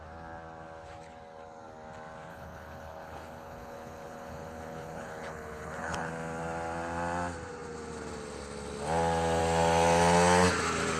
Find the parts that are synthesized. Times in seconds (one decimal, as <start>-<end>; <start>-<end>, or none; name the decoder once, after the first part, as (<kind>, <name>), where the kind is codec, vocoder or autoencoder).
2.3-6.1 (codec, HILCodec)